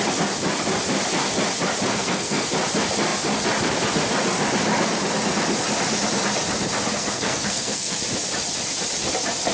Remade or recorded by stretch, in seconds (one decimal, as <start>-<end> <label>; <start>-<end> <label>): 0.0-1.9 recorded; 1.9-2.5 remade; 2.5-6.9 recorded; 6.9-8.0 remade; 8.0-9.5 recorded